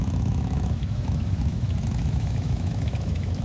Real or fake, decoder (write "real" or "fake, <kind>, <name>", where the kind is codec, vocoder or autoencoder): fake, autoencoder, DAC-VAE